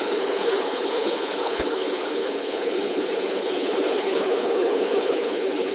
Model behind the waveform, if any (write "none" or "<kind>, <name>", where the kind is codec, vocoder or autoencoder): codec, HILCodec